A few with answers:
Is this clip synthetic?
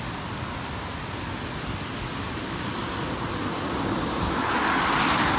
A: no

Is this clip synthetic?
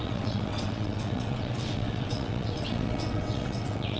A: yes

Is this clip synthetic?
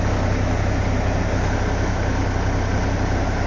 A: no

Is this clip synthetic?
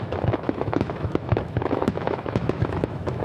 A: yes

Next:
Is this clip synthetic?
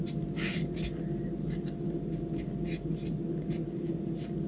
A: no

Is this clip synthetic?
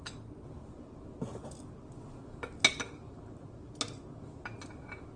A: no